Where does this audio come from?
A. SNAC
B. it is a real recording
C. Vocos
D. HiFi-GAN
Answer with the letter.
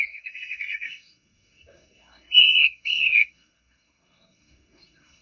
A